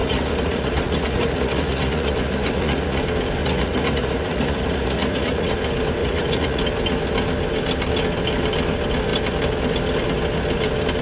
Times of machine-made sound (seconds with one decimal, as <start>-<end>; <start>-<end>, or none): 0.0-3.0; 3.4-5.5; 6.0-6.6

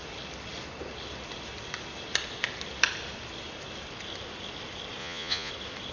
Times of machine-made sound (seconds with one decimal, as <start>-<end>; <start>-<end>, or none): 5.0-5.5

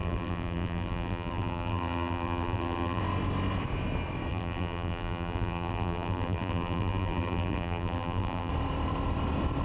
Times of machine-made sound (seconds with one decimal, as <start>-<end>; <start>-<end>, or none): 0.0-3.0; 4.3-8.5

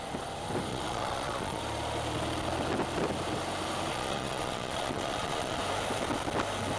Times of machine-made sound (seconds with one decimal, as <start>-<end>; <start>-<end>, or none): 0.7-1.6; 3.9-5.6